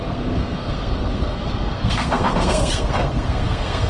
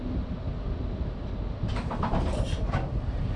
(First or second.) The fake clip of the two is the first